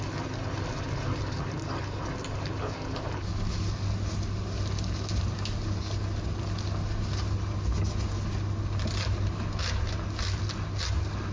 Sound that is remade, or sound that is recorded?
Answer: recorded